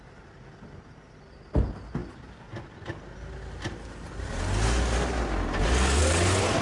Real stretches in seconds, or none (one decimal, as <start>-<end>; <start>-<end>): 0.0-6.6